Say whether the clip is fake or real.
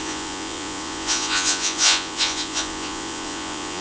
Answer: fake